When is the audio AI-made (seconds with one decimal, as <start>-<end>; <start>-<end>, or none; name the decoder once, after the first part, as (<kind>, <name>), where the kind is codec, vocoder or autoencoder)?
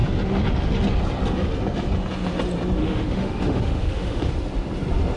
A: 2.8-4.3 (autoencoder, DAC-VAE)